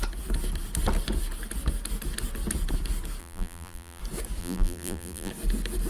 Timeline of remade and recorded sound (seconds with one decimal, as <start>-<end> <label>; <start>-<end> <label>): 0.0-3.2 recorded; 3.2-4.0 remade; 4.0-4.4 recorded; 4.4-5.3 remade; 5.3-5.9 recorded